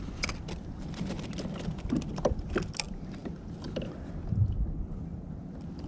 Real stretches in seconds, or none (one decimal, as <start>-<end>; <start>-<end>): 0.0-5.9